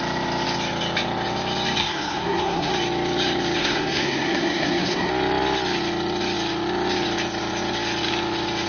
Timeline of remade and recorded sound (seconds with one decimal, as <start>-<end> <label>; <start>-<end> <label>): 0.0-1.8 recorded; 1.8-2.7 remade; 2.7-3.6 recorded; 3.6-5.1 remade; 5.1-8.7 recorded